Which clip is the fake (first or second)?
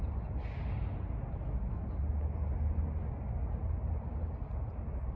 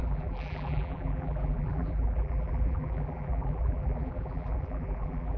second